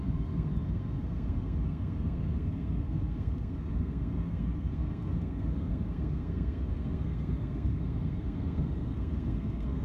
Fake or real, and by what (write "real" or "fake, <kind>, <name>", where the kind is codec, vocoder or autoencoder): fake, codec, SNAC